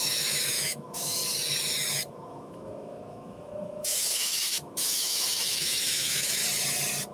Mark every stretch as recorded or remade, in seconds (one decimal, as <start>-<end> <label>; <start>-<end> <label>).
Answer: 0.0-1.2 remade; 1.2-2.1 recorded; 2.1-6.4 remade; 6.4-7.1 recorded